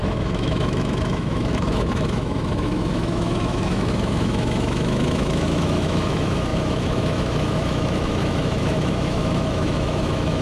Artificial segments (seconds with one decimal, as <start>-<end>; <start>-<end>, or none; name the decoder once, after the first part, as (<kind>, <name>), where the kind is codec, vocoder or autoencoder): 0.0-10.4 (autoencoder, DAC-VAE)